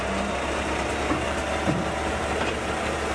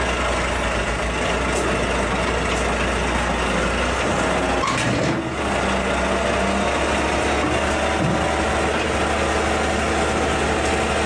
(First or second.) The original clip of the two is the second